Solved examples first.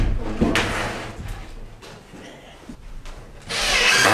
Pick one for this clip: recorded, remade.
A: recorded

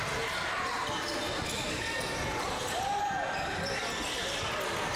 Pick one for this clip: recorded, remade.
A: recorded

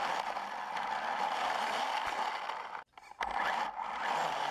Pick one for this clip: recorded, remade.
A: recorded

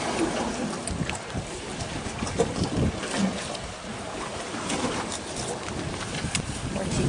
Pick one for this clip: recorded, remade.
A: recorded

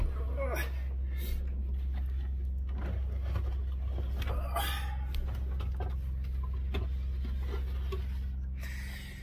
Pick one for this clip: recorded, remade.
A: recorded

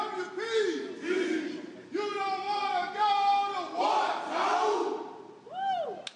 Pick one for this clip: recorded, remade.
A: recorded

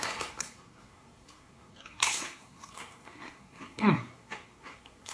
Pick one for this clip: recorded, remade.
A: remade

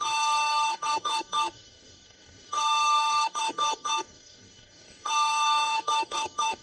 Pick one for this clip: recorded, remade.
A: remade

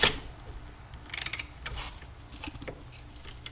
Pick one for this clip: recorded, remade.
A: recorded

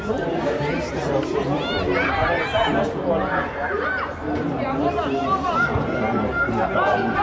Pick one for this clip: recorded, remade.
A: recorded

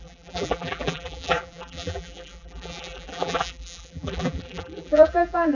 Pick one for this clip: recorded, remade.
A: remade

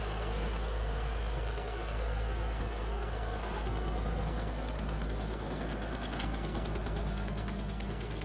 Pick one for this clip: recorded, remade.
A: remade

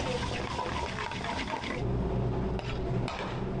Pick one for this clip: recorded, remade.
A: recorded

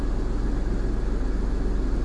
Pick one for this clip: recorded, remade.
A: recorded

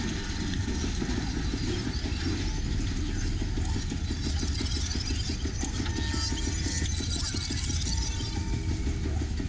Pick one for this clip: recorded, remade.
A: recorded